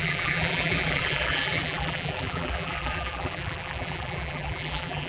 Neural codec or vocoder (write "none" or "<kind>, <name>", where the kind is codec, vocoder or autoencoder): vocoder, BigVGAN v2